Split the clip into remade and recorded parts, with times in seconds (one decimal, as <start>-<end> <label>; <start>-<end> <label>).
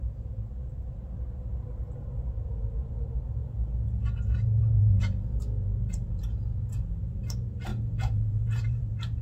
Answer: 0.0-3.4 recorded; 3.4-7.2 remade; 7.2-7.7 recorded; 7.7-9.2 remade